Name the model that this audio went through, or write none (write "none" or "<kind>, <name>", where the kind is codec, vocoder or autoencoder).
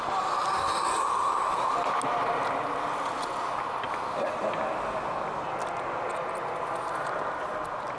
none